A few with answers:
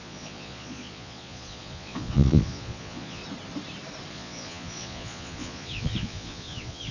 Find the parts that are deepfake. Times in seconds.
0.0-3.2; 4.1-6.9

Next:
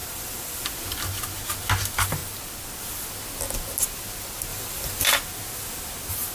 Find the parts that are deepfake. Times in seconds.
0.0-0.8; 4.5-5.1

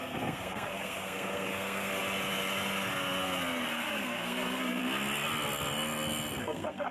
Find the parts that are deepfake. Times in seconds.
0.0-2.0; 3.7-4.8; 6.4-6.9

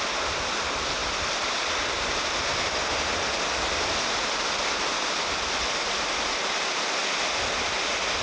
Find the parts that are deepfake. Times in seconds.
none

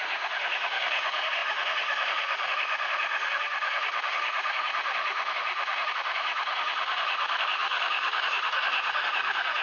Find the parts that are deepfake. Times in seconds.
0.0-9.6

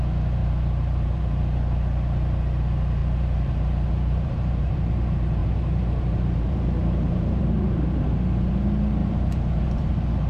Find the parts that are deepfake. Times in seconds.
0.4-1.4; 3.0-4.9; 5.4-7.4; 9.0-9.8

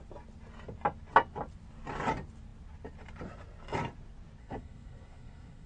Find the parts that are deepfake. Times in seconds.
4.4-5.7